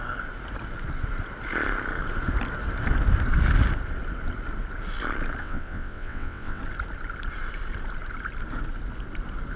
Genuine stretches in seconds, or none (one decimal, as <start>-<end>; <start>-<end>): 0.0-5.4; 6.6-9.6